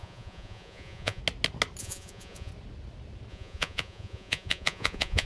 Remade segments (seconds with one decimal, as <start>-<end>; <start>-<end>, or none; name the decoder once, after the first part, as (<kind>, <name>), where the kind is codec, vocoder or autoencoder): 0.0-1.2 (vocoder, Vocos); 1.8-2.5; 3.3-5.3